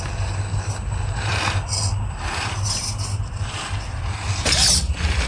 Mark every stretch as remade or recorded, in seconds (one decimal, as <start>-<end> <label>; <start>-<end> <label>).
0.0-5.3 recorded

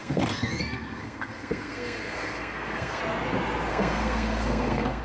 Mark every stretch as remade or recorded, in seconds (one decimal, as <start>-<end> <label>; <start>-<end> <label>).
0.0-3.0 remade; 3.0-3.7 recorded; 3.7-5.0 remade

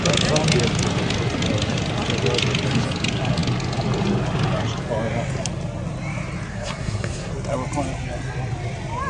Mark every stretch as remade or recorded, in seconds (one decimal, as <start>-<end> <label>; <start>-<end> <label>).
0.0-6.5 recorded; 6.5-7.3 remade; 7.3-9.1 recorded